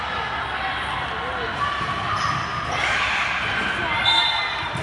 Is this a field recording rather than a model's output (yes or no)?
yes